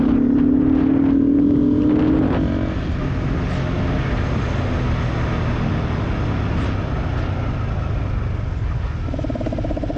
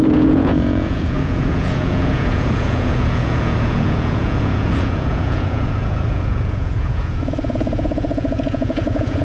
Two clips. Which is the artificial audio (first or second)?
second